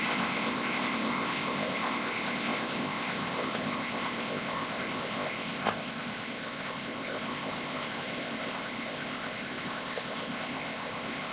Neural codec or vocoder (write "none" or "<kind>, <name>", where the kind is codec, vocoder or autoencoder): codec, ZipCodec